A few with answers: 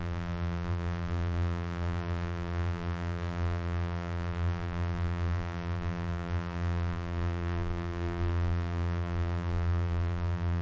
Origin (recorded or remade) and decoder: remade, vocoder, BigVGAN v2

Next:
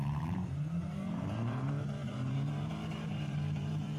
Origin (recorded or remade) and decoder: remade, vocoder, BigVGAN v2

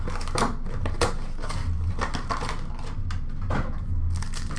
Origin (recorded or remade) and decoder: recorded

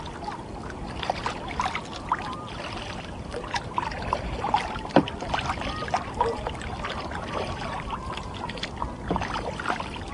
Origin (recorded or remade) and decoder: recorded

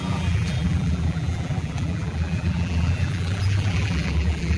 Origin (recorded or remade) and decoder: remade, vocoder, BigVGAN v2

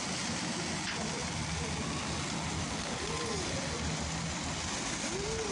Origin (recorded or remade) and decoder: recorded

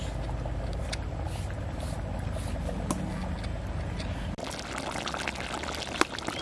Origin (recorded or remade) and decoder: recorded